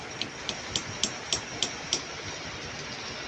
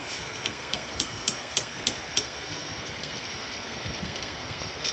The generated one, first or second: second